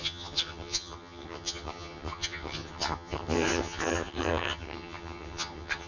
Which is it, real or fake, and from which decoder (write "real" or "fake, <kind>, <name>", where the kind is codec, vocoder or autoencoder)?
fake, vocoder, HiFi-GAN